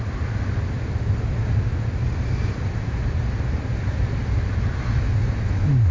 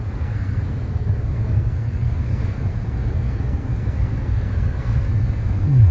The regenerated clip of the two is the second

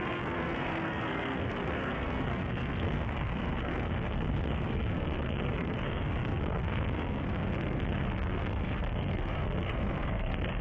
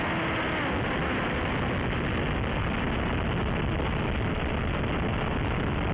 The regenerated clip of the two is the first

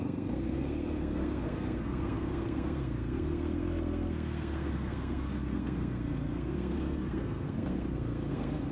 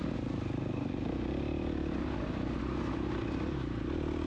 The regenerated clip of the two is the first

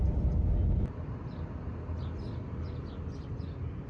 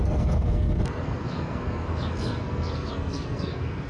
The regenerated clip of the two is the second